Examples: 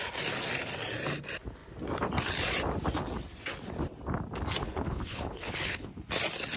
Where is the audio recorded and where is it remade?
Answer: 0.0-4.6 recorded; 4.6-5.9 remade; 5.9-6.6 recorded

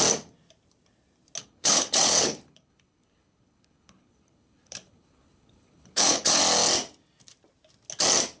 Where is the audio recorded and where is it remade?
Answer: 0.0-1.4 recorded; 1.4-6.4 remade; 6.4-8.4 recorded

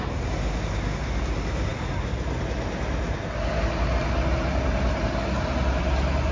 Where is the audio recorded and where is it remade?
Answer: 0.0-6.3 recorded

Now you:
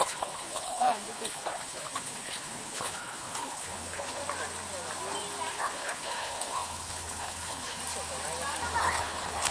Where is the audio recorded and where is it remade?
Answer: 0.0-4.2 remade; 4.2-5.5 recorded; 5.5-7.8 remade; 7.8-8.8 recorded; 8.8-9.5 remade

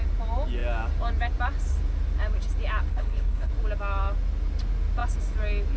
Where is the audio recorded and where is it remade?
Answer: 0.0-2.9 recorded; 2.9-3.5 remade; 3.5-5.8 recorded

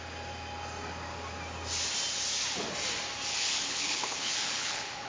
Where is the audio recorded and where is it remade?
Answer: 0.0-3.3 recorded; 3.3-5.1 remade